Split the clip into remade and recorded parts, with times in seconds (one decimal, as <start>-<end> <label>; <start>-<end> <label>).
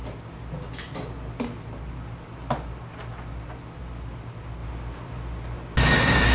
0.0-6.3 recorded